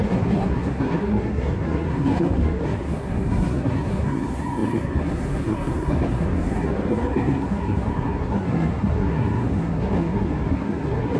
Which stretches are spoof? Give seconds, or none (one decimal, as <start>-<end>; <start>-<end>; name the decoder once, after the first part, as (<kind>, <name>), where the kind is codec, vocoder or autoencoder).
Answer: 0.0-11.2 (codec, SNAC)